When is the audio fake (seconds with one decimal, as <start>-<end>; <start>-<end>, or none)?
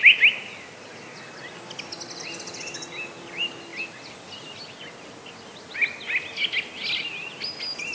none